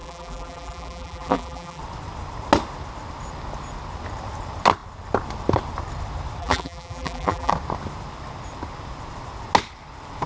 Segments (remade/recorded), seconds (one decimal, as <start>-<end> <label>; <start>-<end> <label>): 0.0-1.8 remade; 1.8-6.4 recorded; 6.4-7.5 remade; 7.5-10.3 recorded